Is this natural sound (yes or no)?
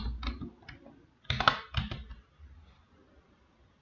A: yes